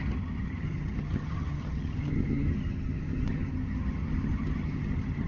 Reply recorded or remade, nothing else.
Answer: remade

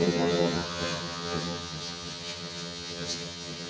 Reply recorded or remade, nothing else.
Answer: remade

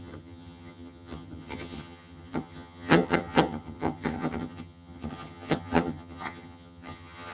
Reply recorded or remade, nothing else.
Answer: remade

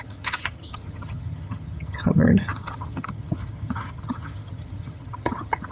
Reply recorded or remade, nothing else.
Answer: remade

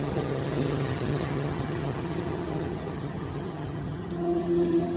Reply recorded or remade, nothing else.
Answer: remade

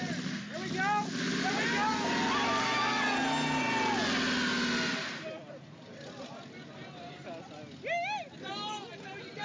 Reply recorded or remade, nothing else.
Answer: recorded